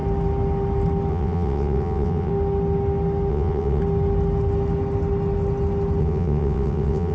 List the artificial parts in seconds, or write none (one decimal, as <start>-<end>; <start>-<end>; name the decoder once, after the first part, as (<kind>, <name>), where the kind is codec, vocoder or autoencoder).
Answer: 1.1-2.3 (vocoder, WaveNeXt); 3.3-3.8; 6.0-7.1